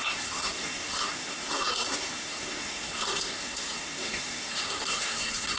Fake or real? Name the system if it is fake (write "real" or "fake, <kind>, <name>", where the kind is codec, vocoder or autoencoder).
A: fake, codec, SNAC